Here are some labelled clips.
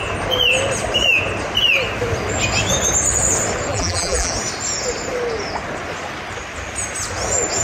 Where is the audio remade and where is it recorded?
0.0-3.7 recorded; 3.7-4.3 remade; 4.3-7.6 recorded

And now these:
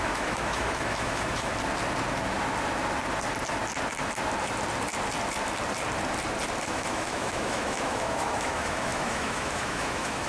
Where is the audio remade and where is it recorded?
0.0-1.5 remade; 1.5-6.6 recorded; 6.6-10.3 remade

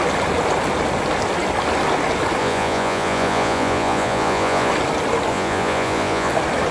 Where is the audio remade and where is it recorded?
0.0-2.4 recorded; 2.4-4.7 remade; 4.7-5.3 recorded; 5.3-6.3 remade; 6.3-6.7 recorded